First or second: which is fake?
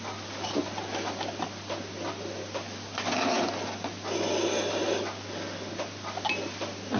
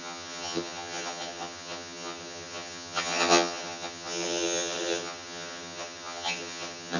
second